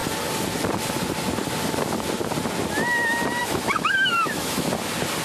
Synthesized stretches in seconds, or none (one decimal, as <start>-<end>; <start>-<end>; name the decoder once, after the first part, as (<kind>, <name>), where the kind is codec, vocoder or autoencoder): 3.4-4.7 (autoencoder, DAC-VAE)